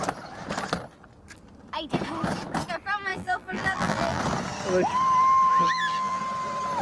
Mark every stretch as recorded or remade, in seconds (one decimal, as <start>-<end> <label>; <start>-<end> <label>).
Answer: 0.0-3.1 recorded; 3.1-4.2 remade; 4.2-5.5 recorded; 5.5-6.2 remade; 6.2-6.8 recorded